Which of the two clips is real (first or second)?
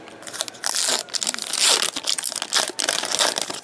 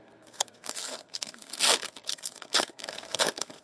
first